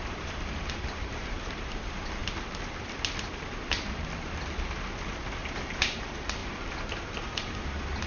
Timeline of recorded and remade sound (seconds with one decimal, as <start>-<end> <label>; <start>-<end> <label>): 0.0-2.2 remade; 2.2-5.4 recorded; 5.4-8.1 remade